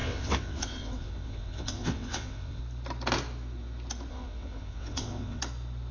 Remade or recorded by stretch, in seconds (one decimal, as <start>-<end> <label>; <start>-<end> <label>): 0.0-2.6 remade; 2.6-4.1 recorded; 4.1-5.4 remade; 5.4-5.9 recorded